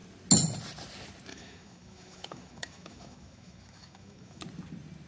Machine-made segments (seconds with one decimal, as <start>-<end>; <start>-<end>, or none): 1.3-4.4